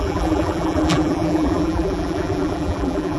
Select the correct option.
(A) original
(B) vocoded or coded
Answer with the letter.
B